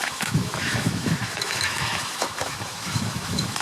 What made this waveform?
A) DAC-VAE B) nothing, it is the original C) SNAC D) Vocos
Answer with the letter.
A